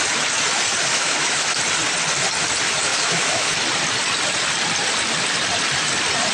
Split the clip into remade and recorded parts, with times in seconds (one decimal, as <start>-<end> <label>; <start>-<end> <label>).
0.0-0.9 recorded; 0.9-1.6 remade; 1.6-2.9 recorded; 2.9-3.5 remade; 3.5-6.3 recorded